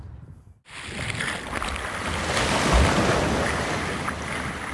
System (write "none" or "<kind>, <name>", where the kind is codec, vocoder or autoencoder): none